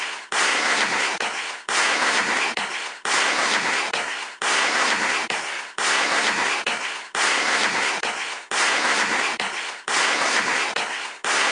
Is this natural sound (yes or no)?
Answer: no